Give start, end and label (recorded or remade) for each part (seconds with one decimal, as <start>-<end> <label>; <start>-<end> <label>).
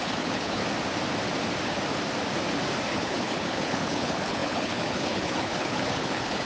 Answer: 0.0-0.6 remade; 0.6-2.9 recorded; 2.9-6.5 remade